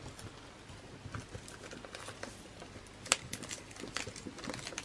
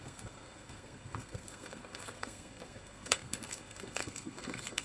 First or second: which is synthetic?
second